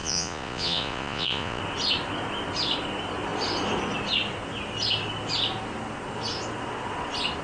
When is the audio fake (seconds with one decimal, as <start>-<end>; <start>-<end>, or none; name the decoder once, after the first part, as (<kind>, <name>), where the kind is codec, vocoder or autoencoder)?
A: 0.0-1.6 (vocoder, Vocos)